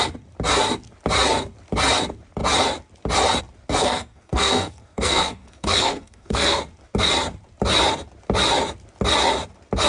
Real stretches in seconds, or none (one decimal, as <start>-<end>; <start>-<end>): 0.0-3.8; 6.6-9.9